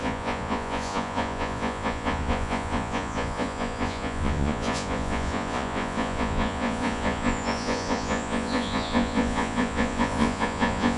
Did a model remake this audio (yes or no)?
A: yes